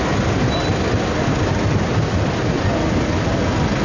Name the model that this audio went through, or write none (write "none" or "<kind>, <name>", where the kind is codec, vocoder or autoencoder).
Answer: none